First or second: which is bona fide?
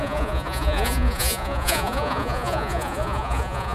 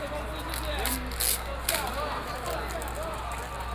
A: second